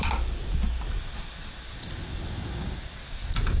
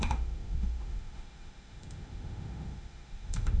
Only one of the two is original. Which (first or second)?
first